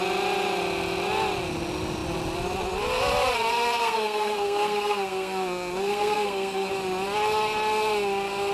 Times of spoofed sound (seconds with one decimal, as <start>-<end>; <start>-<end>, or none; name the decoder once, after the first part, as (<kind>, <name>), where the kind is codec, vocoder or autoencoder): 3.8-6.7 (codec, SNAC)

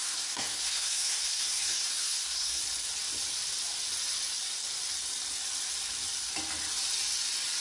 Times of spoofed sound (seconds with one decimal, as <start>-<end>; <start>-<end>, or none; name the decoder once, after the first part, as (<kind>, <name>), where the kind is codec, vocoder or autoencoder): 0.0-2.6 (codec, SNAC)

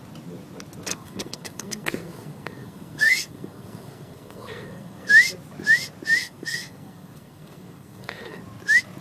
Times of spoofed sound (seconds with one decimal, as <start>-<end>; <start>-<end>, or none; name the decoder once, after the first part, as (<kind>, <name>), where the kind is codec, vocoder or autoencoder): 0.9-5.1 (codec, SNAC); 6.2-8.4